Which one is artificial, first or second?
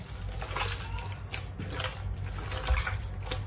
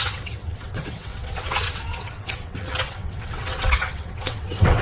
second